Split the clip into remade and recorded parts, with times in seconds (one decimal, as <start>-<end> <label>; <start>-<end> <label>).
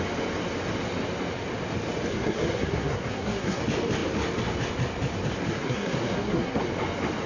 0.0-2.1 recorded; 2.1-3.6 remade; 3.6-5.5 recorded; 5.5-6.6 remade; 6.6-7.3 recorded